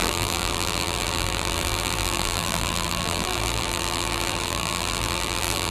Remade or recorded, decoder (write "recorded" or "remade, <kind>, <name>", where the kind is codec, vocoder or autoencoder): remade, vocoder, BigVGAN v2